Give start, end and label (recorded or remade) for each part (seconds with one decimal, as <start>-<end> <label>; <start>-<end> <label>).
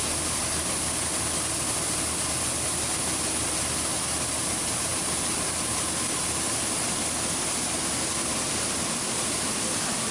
0.0-10.1 recorded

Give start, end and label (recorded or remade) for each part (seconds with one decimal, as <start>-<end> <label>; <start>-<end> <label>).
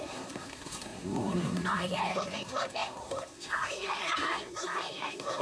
0.0-5.4 remade